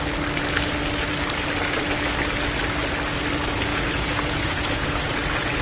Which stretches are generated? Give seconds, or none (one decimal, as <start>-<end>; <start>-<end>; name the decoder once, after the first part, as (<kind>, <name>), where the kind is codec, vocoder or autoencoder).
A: 3.7-5.6 (vocoder, Vocos)